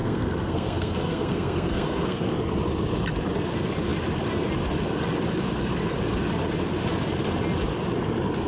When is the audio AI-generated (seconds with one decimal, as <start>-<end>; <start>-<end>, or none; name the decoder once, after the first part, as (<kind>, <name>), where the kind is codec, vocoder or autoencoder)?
0.0-2.3 (codec, SNAC)